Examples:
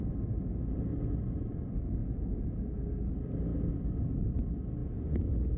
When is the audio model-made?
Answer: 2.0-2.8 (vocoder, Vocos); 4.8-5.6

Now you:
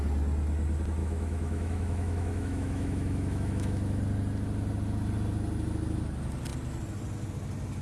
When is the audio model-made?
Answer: 1.0-4.0 (autoencoder, DAC-VAE)

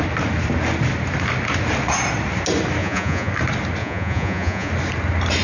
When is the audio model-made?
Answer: 2.8-3.3 (vocoder, Vocos); 3.8-4.7

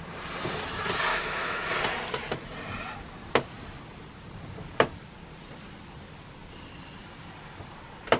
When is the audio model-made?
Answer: 1.1-1.7 (autoencoder, DAC-VAE)

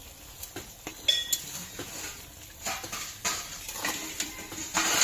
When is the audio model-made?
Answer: none

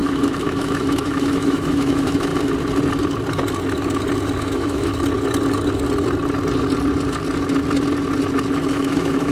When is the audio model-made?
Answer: 0.0-2.3 (autoencoder, DAC-VAE); 4.4-4.9; 8.7-9.3

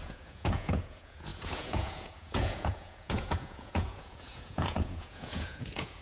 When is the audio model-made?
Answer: 0.0-6.0 (vocoder, Vocos)